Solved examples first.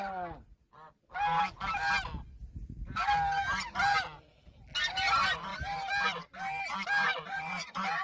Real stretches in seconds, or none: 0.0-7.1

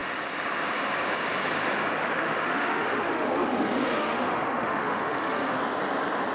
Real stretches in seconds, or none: 0.0-2.0; 5.6-6.3